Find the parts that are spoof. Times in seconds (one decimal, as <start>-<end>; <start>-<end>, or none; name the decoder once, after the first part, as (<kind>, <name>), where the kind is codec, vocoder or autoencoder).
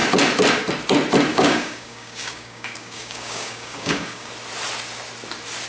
1.3-4.3 (codec, DAC)